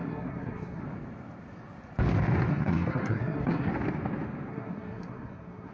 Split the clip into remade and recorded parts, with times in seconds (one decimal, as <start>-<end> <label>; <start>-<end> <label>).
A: 0.0-0.8 remade; 0.8-2.5 recorded; 2.5-3.7 remade; 3.7-4.5 recorded; 4.5-5.7 remade